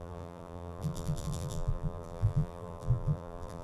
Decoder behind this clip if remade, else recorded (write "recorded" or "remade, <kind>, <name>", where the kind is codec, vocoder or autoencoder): remade, vocoder, BigVGAN v2